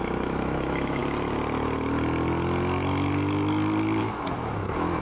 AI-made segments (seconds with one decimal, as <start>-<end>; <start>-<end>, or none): 0.0-1.0; 4.0-5.0